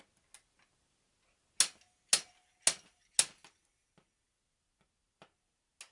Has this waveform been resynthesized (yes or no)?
no